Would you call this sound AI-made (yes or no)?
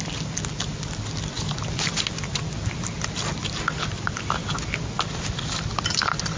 no